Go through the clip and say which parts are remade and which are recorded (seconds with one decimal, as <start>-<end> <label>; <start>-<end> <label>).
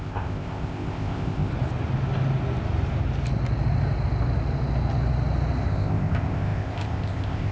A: 0.0-1.5 remade; 1.5-5.7 recorded; 5.7-7.5 remade